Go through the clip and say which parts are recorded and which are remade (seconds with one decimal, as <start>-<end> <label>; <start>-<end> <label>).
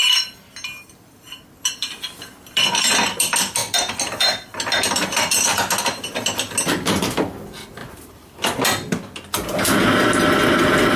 0.0-7.8 recorded; 7.8-8.7 remade; 8.7-11.0 recorded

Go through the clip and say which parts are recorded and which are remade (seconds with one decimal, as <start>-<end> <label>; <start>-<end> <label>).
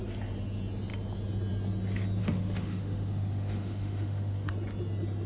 0.0-2.2 recorded; 2.2-4.5 remade; 4.5-5.3 recorded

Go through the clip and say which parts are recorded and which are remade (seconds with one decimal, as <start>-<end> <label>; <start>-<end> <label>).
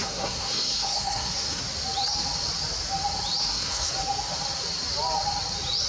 0.0-1.6 remade; 1.6-3.4 recorded; 3.4-3.9 remade; 3.9-5.9 recorded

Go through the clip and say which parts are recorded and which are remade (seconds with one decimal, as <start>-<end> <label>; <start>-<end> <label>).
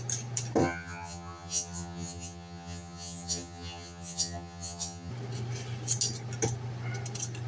0.0-0.6 recorded; 0.6-5.1 remade; 5.1-7.5 recorded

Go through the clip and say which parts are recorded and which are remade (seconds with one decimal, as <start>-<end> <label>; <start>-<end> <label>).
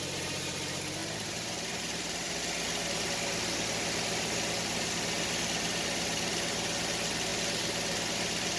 0.0-1.0 recorded; 1.0-2.4 remade; 2.4-8.6 recorded